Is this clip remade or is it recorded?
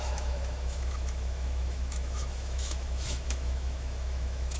remade